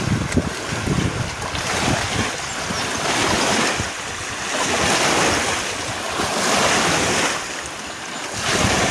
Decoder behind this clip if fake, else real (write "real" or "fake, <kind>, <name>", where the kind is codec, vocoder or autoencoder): real